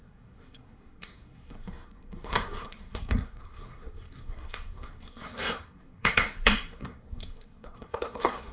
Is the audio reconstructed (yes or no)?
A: yes